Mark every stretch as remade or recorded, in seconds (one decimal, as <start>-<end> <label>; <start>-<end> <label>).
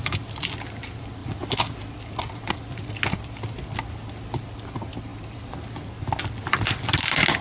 0.0-1.2 recorded; 1.2-2.5 remade; 2.5-5.1 recorded; 5.1-6.8 remade; 6.8-7.4 recorded